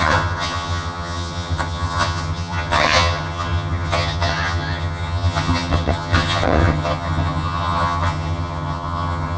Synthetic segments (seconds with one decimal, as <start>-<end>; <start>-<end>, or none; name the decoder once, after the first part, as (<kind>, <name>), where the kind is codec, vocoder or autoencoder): 0.0-9.4 (vocoder, HiFi-GAN)

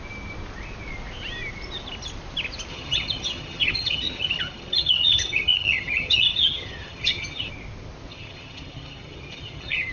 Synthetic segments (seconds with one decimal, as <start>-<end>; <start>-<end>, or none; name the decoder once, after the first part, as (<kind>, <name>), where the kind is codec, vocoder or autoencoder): 2.7-7.5 (vocoder, HiFi-GAN); 8.1-9.9

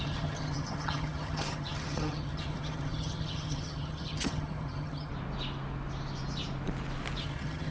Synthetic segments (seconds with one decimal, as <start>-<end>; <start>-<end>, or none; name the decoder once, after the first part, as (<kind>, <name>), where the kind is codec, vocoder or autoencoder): 0.0-5.1 (vocoder, HiFi-GAN); 7.2-7.7

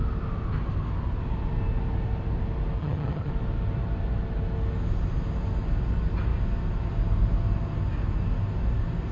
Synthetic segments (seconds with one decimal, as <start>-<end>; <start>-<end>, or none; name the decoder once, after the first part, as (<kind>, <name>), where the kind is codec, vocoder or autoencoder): 2.8-3.3 (vocoder, HiFi-GAN)